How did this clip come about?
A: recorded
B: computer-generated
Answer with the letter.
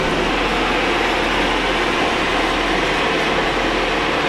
A